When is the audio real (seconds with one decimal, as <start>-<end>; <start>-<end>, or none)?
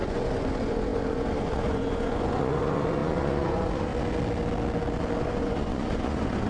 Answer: 3.9-5.2